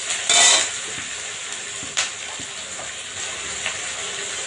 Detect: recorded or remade recorded